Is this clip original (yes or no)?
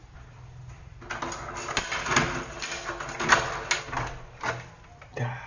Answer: yes